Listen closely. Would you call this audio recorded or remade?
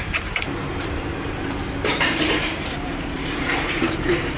remade